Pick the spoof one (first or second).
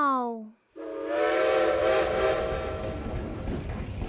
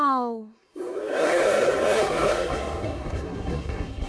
second